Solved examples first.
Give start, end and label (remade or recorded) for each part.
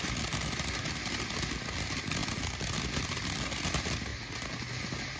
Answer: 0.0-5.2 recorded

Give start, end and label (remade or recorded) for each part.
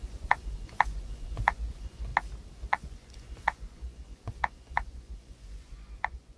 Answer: 0.0-2.1 remade; 2.1-2.6 recorded; 2.6-6.4 remade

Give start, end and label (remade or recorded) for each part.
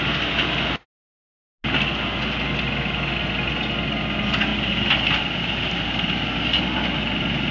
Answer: 0.0-7.5 recorded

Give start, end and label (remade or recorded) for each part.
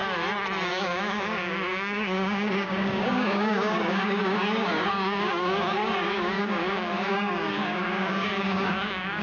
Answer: 0.0-0.7 recorded; 0.7-9.2 remade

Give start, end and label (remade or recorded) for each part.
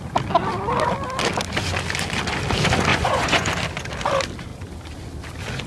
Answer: 0.0-2.9 recorded; 2.9-3.5 remade; 3.5-5.7 recorded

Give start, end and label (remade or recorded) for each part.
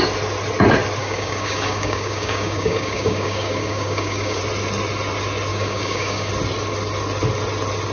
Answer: 0.0-1.0 recorded; 1.0-4.4 remade; 4.4-5.5 recorded; 5.5-6.3 remade; 6.3-7.9 recorded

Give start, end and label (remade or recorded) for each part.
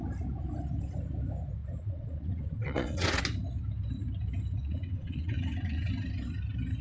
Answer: 0.0-1.6 recorded; 1.6-3.2 remade; 3.2-4.6 recorded; 4.6-5.9 remade; 5.9-6.8 recorded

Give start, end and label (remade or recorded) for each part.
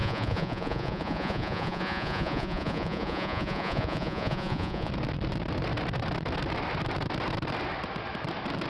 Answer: 0.0-4.9 remade; 4.9-8.7 recorded